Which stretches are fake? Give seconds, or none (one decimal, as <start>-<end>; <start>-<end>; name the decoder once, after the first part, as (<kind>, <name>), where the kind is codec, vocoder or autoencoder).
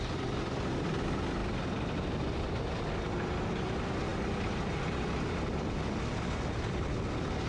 none